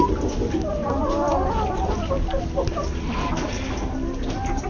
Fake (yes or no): no